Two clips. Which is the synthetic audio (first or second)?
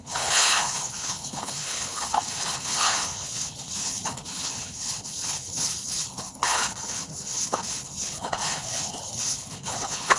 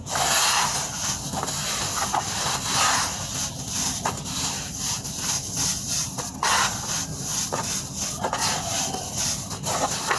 first